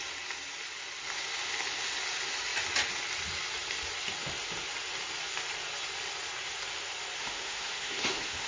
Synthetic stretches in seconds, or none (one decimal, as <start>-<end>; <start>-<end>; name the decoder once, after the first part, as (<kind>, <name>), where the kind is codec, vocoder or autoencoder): 7.2-8.5 (autoencoder, DAC-VAE)